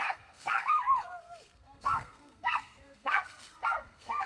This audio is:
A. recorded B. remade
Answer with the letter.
B